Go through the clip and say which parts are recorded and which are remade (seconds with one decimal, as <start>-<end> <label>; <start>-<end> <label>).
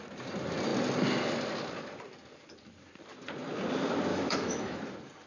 0.0-4.1 recorded; 4.1-4.8 remade; 4.8-5.3 recorded